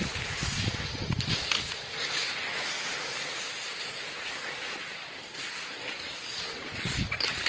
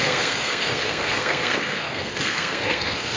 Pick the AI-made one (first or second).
second